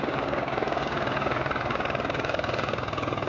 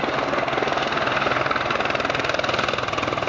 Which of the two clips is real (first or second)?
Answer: second